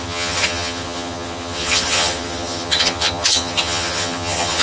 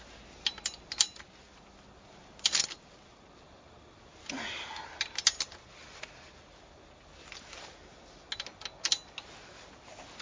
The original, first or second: second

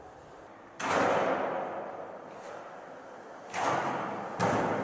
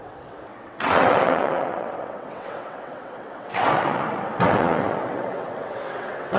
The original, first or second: first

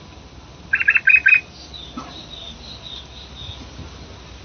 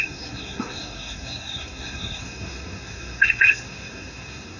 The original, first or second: first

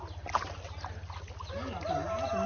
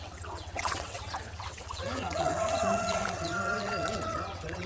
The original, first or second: first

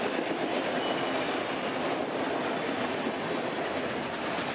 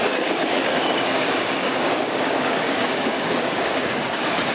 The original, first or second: first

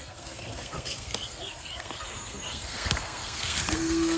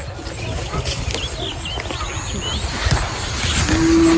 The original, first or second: second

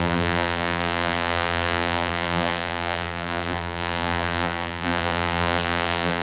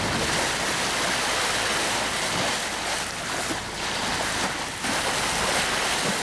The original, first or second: second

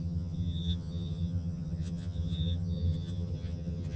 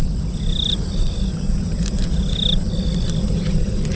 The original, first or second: second